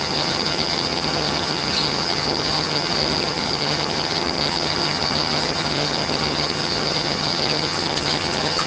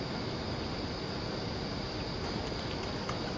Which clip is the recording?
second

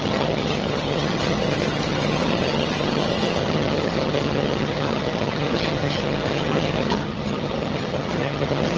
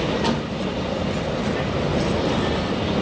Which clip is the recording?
second